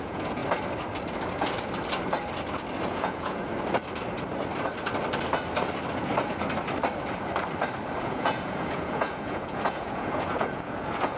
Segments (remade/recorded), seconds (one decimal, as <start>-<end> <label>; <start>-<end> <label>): 0.0-0.4 remade; 0.4-2.9 recorded; 2.9-3.5 remade; 3.5-8.0 recorded; 8.0-11.2 remade